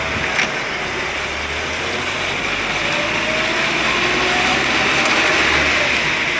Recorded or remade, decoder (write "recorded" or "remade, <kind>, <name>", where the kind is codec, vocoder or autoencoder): recorded